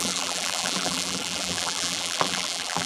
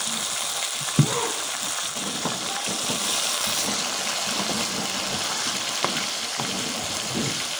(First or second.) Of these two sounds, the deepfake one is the first